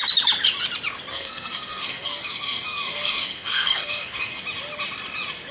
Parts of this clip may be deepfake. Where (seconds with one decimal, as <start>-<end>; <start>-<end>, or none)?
1.1-4.4